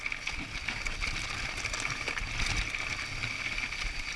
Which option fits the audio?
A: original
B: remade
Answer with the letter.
A